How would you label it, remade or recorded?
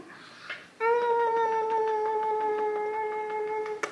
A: recorded